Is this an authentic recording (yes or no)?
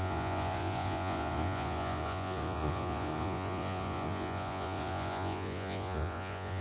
no